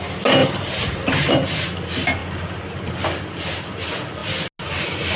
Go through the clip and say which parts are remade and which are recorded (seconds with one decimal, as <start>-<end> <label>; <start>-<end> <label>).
0.0-0.4 recorded; 0.4-1.3 remade; 1.3-5.2 recorded